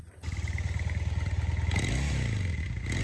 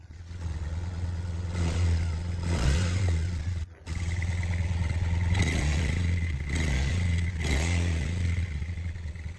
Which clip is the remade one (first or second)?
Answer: second